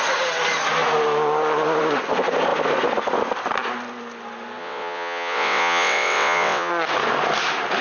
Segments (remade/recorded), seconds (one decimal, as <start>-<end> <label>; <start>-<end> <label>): 0.0-4.6 recorded; 4.6-6.7 remade; 6.7-7.8 recorded